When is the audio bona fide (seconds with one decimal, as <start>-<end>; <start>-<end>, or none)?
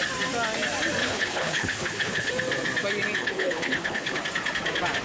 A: 0.0-1.0; 2.3-3.2; 4.2-5.0